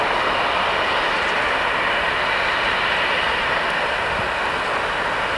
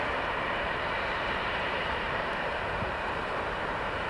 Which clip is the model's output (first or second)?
second